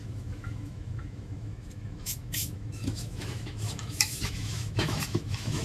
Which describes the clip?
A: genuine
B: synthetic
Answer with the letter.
B